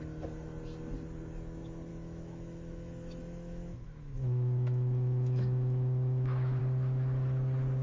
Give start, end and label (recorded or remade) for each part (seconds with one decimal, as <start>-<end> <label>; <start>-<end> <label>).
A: 0.0-1.9 recorded; 1.9-6.6 remade; 6.6-7.8 recorded